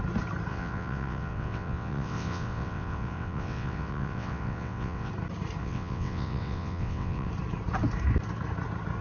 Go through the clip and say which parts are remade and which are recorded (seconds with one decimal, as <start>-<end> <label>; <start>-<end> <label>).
0.0-0.5 recorded; 0.5-5.1 remade; 5.1-5.6 recorded; 5.6-7.3 remade; 7.3-9.0 recorded